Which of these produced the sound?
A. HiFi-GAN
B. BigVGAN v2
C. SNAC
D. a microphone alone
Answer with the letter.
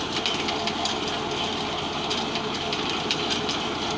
D